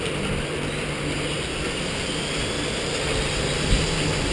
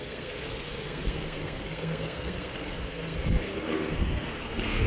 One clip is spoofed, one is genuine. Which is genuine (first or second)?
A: first